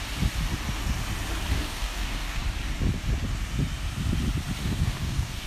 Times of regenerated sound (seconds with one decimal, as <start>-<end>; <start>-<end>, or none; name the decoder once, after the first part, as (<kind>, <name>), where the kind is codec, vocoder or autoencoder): 1.5-2.4 (codec, DAC); 4.6-5.5